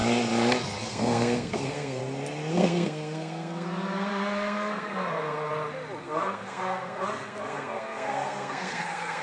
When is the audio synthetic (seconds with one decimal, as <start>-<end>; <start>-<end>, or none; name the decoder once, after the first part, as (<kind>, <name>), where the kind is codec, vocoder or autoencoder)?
0.9-2.0 (codec, SNAC); 2.5-5.5; 6.0-9.2